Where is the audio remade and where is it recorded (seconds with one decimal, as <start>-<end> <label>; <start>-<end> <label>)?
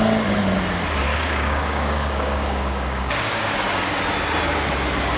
0.0-1.1 recorded; 1.1-4.0 remade; 4.0-5.2 recorded